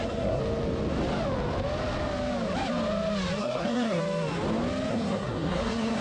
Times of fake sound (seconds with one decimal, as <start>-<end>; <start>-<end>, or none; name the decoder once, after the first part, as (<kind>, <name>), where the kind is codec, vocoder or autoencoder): 0.0-0.4 (codec, SNAC); 3.4-4.0; 4.9-6.0